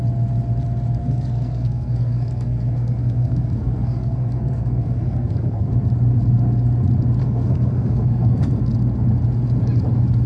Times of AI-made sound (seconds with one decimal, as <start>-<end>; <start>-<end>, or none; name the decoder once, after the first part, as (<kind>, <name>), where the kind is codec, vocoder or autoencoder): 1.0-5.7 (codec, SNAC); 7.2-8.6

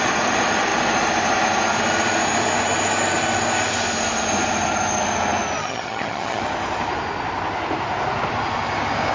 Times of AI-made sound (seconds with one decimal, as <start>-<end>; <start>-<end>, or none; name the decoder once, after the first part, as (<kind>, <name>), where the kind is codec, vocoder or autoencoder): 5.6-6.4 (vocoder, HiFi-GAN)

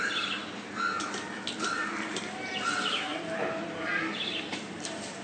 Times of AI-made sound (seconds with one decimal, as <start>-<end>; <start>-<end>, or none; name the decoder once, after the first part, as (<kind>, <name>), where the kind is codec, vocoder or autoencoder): 0.0-0.4 (vocoder, BigVGAN v2); 1.6-3.1; 4.0-5.2